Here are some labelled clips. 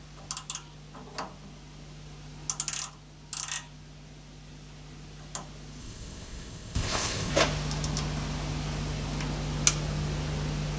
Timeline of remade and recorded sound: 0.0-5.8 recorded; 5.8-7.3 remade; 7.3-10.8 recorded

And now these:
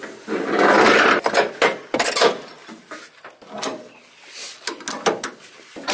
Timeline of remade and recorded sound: 0.0-5.9 recorded

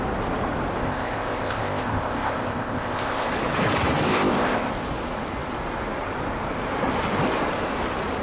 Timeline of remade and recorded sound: 0.0-0.8 recorded; 0.8-3.3 remade; 3.3-4.1 recorded; 4.1-4.7 remade; 4.7-8.2 recorded